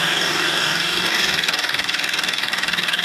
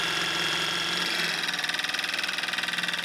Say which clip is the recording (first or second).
second